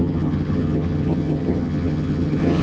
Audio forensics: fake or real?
fake